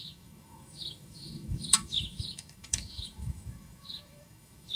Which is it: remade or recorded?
remade